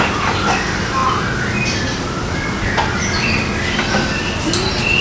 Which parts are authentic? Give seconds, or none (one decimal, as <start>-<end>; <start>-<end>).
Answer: 1.0-2.6